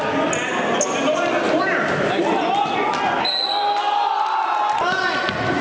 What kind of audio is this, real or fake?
real